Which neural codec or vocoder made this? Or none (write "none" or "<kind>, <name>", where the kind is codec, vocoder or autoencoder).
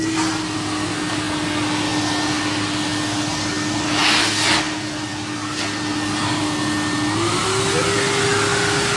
none